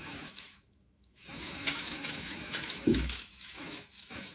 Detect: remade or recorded remade